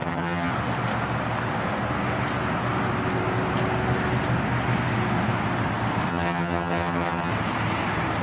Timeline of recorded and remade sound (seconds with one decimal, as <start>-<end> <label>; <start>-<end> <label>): 0.0-0.5 remade; 0.5-6.1 recorded; 6.1-7.3 remade; 7.3-8.2 recorded